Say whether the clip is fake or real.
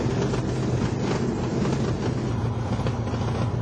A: real